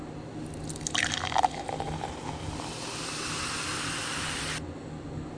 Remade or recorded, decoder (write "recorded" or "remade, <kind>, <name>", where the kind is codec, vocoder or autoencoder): recorded